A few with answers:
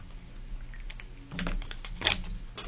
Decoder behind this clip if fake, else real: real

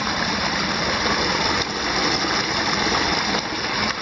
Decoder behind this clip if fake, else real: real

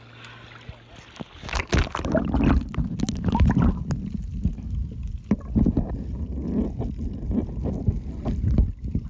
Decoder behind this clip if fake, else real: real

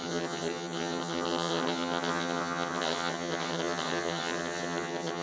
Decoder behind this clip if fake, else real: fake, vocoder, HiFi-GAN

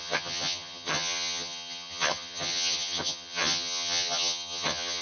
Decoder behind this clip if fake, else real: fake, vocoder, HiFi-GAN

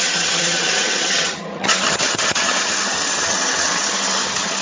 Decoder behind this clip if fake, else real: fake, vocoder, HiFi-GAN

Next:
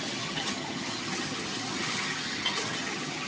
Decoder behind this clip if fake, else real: fake, vocoder, HiFi-GAN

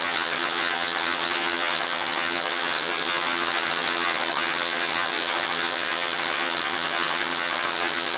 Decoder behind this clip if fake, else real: fake, vocoder, HiFi-GAN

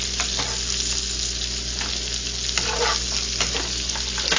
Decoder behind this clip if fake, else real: real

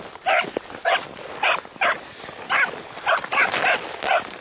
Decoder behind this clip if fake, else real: real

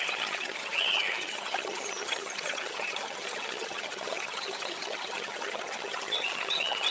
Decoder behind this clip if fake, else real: fake, vocoder, HiFi-GAN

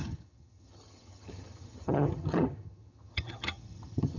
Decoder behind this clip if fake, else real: fake, vocoder, HiFi-GAN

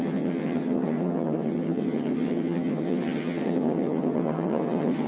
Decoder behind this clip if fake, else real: fake, vocoder, HiFi-GAN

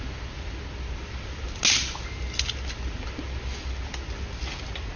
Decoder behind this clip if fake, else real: real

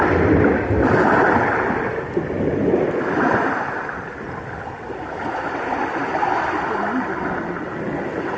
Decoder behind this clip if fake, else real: real